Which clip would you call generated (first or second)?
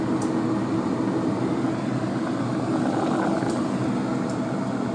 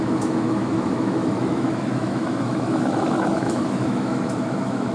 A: second